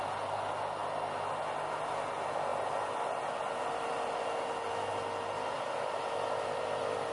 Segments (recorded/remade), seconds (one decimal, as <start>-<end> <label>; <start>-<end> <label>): 0.0-7.1 recorded